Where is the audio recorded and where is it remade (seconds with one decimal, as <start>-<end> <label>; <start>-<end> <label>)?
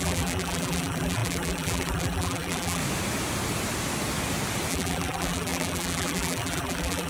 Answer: 0.0-2.8 remade; 2.8-4.7 recorded; 4.7-7.1 remade